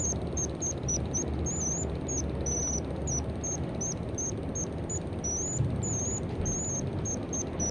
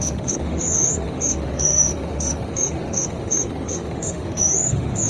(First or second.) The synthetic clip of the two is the second